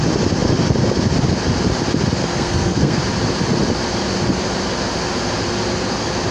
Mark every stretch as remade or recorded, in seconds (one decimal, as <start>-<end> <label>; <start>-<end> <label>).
0.0-2.2 recorded; 2.2-3.0 remade; 3.0-6.3 recorded